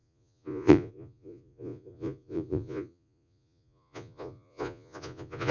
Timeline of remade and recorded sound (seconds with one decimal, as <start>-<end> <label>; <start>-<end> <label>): 0.0-5.5 remade